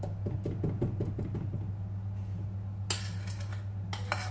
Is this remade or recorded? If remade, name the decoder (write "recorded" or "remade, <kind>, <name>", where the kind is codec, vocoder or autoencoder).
recorded